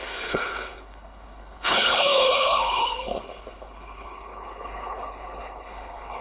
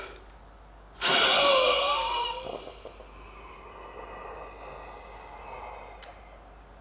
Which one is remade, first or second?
first